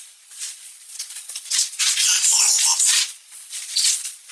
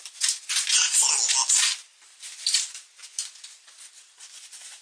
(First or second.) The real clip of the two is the second